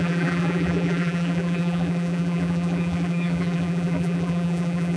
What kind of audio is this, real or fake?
fake